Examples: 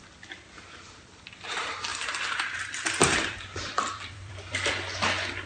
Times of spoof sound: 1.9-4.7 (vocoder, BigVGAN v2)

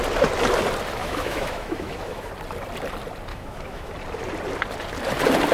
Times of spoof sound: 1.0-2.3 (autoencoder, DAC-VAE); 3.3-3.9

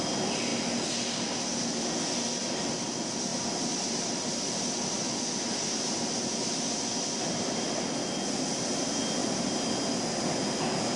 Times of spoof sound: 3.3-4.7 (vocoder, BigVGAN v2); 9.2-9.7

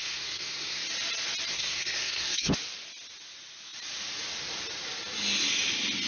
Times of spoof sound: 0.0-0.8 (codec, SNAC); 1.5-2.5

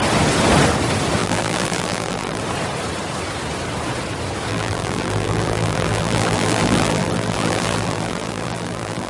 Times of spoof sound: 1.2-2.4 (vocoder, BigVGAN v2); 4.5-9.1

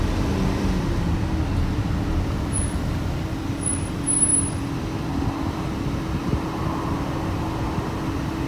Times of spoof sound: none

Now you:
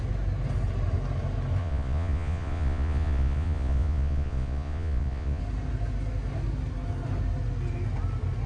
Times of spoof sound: 1.6-5.4 (vocoder, Vocos)